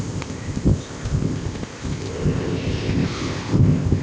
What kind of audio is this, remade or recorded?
remade